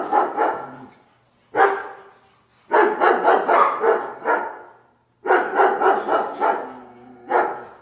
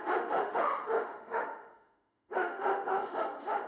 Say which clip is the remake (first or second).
second